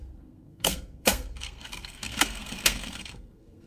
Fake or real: fake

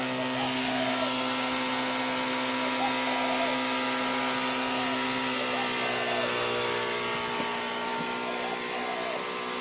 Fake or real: real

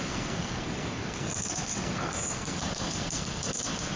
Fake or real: fake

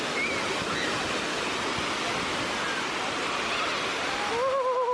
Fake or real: real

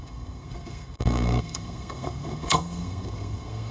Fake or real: fake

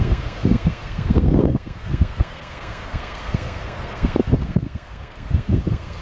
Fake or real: fake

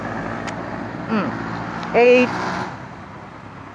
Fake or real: real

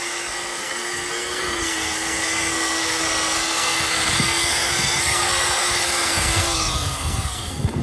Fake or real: fake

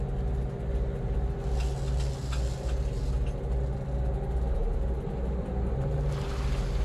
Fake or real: real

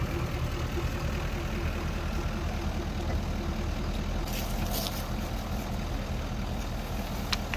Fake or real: real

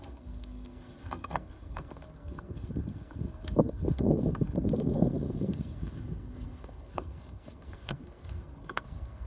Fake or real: fake